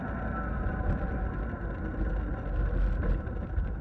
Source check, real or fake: real